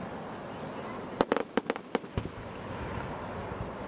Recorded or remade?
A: recorded